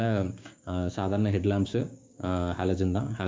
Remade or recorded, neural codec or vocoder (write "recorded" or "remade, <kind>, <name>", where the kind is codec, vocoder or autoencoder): remade, codec, DAC